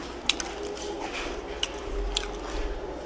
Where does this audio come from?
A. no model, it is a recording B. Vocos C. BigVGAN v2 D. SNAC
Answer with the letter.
A